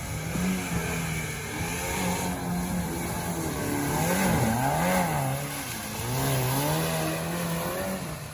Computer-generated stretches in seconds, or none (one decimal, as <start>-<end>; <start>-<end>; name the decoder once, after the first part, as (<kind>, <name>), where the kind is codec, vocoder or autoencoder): none